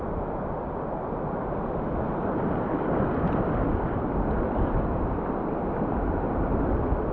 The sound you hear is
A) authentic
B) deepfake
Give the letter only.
A